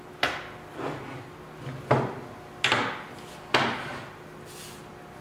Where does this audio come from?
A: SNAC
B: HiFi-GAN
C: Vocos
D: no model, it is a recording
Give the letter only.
D